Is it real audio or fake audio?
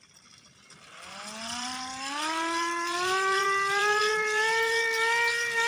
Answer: fake